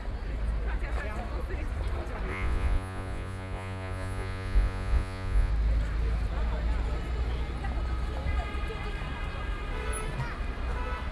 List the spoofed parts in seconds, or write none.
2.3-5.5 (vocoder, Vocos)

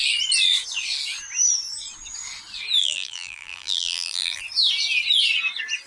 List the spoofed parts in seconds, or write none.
2.8-4.4 (vocoder, BigVGAN v2)

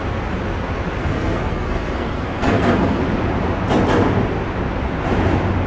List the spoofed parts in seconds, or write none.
1.0-3.0 (codec, SNAC)

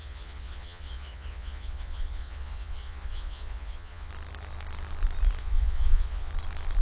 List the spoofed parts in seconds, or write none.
0.0-4.1 (vocoder, Vocos); 5.4-6.3

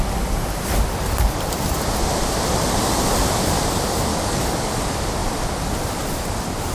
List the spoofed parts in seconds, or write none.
4.1-4.7 (codec, DAC)

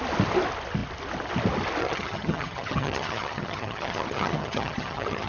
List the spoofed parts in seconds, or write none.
1.8-5.3 (vocoder, HiFi-GAN)

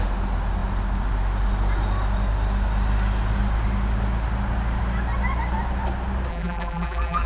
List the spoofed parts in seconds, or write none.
6.3-7.3 (vocoder, BigVGAN v2)